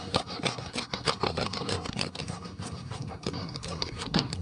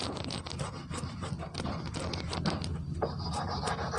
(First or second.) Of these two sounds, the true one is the second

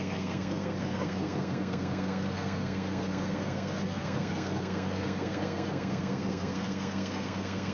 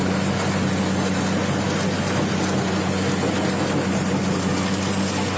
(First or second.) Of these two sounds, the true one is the second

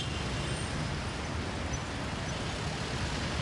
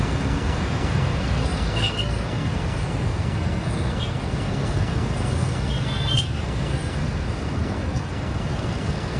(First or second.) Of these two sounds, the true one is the first